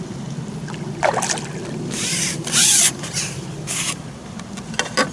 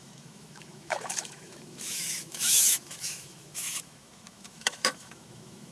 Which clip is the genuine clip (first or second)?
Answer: first